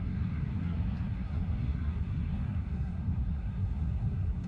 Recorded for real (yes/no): no